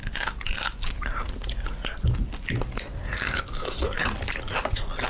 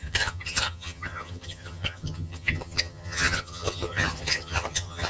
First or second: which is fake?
second